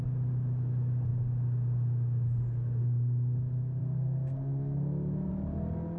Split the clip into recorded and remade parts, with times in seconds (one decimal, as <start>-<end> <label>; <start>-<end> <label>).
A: 0.0-3.8 recorded; 3.8-5.3 remade; 5.3-6.0 recorded

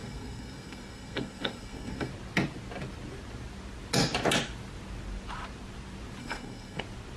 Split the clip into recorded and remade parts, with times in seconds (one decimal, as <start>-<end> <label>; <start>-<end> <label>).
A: 0.0-2.1 remade; 2.1-6.2 recorded; 6.2-6.8 remade; 6.8-7.2 recorded

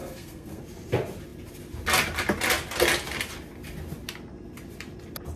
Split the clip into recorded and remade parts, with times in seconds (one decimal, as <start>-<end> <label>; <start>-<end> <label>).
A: 0.0-0.6 remade; 0.6-5.4 recorded

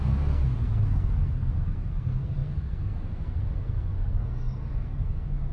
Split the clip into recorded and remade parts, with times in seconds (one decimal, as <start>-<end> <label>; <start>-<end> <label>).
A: 0.0-5.5 remade